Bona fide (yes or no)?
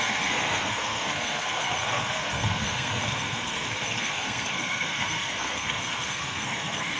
no